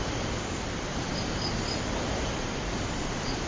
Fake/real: real